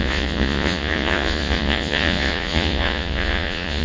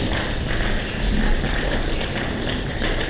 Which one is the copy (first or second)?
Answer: first